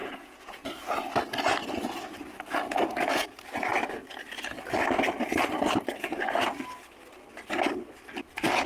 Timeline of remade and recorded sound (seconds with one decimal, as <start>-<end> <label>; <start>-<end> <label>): 0.0-0.7 remade; 0.7-8.7 recorded